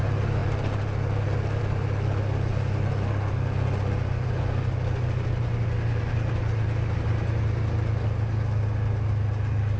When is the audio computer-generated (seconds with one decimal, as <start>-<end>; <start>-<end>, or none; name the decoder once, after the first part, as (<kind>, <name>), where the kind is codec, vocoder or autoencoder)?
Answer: none